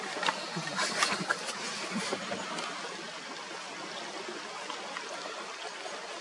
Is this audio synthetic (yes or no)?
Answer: no